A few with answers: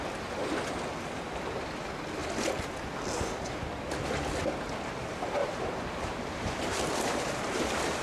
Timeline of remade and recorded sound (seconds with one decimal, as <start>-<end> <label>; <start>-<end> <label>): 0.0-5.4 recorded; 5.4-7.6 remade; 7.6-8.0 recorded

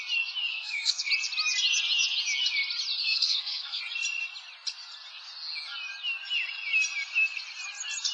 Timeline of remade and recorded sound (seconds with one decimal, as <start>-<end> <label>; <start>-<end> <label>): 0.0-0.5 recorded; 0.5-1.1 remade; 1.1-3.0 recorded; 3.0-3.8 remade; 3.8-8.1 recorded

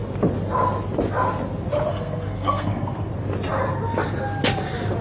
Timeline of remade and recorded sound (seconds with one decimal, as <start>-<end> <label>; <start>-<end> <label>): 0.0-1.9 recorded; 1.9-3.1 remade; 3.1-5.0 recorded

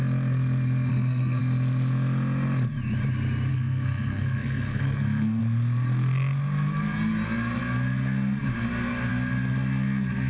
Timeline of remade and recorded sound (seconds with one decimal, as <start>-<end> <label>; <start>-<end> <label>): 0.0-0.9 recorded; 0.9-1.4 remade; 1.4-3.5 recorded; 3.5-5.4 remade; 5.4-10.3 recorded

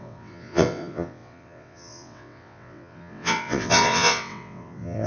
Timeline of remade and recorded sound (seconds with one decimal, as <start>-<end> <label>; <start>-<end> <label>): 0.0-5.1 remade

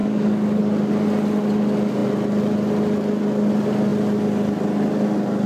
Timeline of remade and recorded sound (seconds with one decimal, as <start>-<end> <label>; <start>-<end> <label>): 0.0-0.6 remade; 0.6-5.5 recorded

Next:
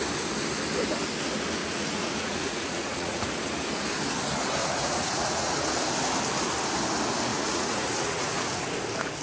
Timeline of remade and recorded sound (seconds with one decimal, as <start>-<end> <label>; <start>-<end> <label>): 0.0-1.6 recorded; 1.6-3.2 remade; 3.2-4.6 recorded; 4.6-5.7 remade; 5.7-7.3 recorded; 7.3-8.6 remade; 8.6-9.2 recorded